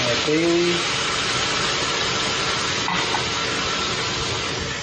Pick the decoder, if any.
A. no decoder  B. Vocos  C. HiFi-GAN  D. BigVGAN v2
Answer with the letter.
A